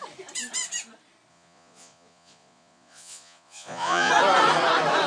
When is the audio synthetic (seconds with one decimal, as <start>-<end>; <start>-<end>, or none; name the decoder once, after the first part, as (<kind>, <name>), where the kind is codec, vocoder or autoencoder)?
1.3-4.1 (vocoder, Vocos)

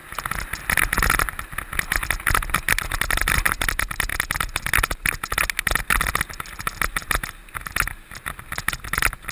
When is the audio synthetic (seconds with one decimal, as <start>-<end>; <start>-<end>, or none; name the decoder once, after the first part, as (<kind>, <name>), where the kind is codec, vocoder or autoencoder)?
none

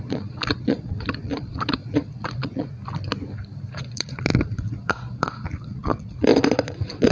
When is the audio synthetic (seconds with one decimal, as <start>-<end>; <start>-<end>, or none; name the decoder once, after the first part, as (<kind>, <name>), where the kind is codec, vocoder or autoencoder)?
0.0-2.8 (vocoder, Vocos); 3.7-7.1

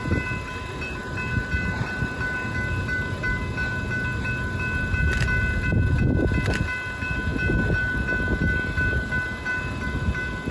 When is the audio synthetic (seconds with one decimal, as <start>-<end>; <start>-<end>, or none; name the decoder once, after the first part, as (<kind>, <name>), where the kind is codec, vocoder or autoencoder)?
none

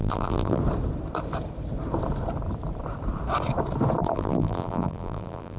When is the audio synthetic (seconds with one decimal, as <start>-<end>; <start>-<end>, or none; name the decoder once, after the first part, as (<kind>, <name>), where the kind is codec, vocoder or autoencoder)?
0.0-0.6 (vocoder, BigVGAN v2); 4.0-5.6

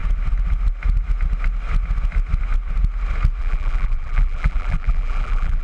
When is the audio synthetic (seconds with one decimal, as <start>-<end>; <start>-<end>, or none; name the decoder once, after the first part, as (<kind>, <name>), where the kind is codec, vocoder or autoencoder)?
3.4-5.6 (vocoder, BigVGAN v2)